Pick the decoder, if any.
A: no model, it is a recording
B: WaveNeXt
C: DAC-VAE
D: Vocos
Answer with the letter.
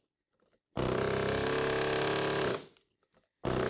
A